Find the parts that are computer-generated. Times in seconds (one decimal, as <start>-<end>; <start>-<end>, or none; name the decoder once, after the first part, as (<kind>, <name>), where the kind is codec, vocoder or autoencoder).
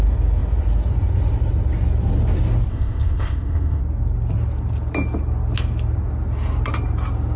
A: 2.7-3.8 (codec, ZipCodec)